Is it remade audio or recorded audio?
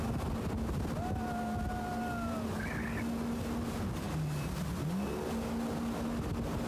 recorded